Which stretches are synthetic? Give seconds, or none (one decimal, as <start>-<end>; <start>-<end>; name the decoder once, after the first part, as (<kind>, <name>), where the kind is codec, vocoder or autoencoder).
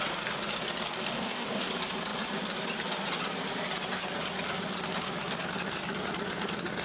0.9-1.7 (codec, DAC)